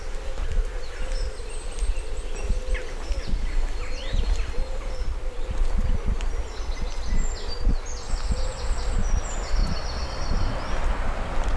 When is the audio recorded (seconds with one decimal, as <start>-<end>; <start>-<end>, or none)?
0.0-11.6